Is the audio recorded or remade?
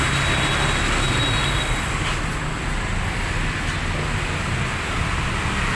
recorded